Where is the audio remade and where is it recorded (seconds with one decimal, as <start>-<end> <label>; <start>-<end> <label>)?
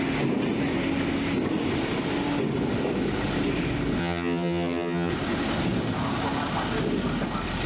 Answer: 0.0-4.0 recorded; 4.0-5.1 remade; 5.1-7.7 recorded